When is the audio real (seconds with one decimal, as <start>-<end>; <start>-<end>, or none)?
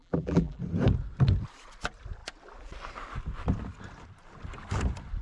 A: 0.6-5.2